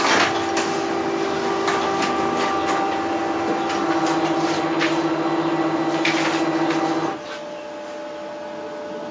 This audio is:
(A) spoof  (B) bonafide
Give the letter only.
B